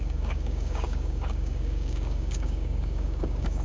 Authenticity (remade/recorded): remade